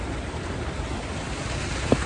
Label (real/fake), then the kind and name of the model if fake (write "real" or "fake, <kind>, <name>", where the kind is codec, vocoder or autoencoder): real